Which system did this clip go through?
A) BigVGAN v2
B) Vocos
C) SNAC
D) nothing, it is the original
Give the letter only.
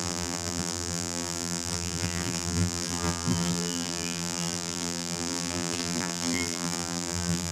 A